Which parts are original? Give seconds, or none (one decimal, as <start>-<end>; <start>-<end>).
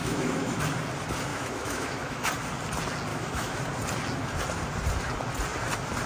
0.6-1.3; 2.3-3.1; 3.6-6.1